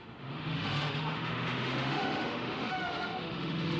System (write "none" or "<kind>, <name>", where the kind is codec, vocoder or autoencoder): autoencoder, DAC-VAE